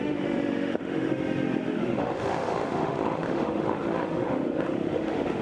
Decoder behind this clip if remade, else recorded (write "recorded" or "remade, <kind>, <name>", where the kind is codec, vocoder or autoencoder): remade, autoencoder, DAC-VAE